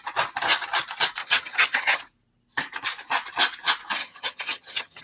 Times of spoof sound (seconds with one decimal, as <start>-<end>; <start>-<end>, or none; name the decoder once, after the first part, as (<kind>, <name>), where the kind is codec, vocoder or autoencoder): 1.2-2.0 (vocoder, HiFi-GAN); 4.0-5.0